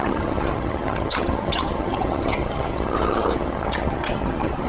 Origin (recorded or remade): remade